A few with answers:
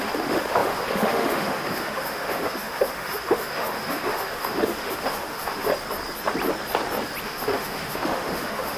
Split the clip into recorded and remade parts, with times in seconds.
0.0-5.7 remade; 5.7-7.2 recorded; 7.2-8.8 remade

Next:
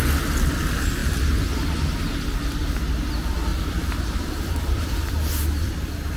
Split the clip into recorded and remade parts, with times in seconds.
0.0-3.5 recorded; 3.5-5.1 remade; 5.1-6.2 recorded

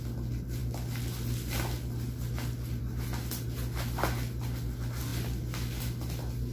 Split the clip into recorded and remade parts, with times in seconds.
0.0-6.5 recorded

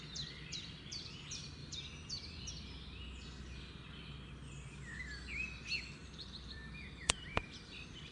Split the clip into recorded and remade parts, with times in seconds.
0.0-1.6 recorded; 1.6-2.5 remade; 2.5-6.0 recorded; 6.0-8.1 remade

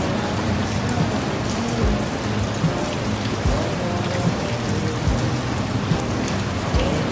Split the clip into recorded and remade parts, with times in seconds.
0.0-2.8 recorded; 2.8-4.5 remade; 4.5-7.1 recorded

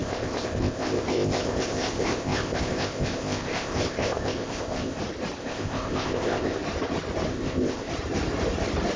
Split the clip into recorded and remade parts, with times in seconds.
0.0-5.0 remade; 5.0-5.4 recorded; 5.4-6.6 remade; 6.6-7.3 recorded; 7.3-7.9 remade; 7.9-9.0 recorded

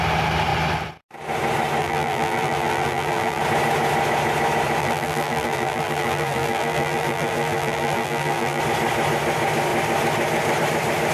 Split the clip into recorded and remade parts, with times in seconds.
0.0-1.8 recorded; 1.8-3.4 remade; 3.4-4.8 recorded; 4.8-8.6 remade; 8.6-11.1 recorded